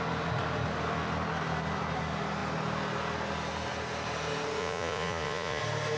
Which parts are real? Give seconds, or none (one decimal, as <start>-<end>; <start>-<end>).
0.0-4.6; 5.6-6.0